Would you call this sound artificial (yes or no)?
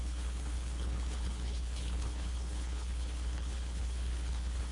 yes